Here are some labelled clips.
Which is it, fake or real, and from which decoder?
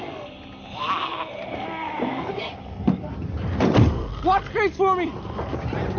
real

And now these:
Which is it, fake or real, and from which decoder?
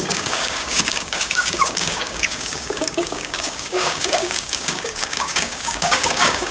fake, codec, DAC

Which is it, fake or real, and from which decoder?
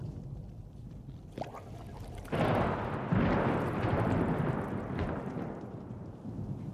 real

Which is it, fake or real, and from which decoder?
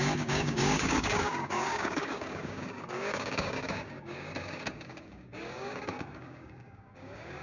fake, codec, DAC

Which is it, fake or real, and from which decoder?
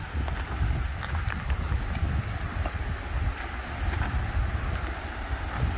real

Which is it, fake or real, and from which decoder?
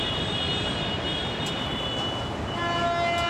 real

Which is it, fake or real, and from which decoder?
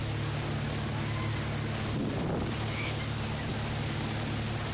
real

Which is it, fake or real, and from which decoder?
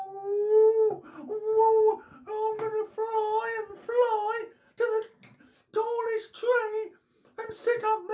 real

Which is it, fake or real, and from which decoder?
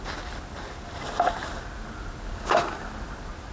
real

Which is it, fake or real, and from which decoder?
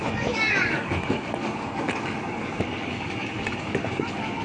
fake, codec, DAC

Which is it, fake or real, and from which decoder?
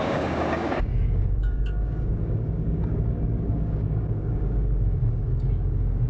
fake, codec, DAC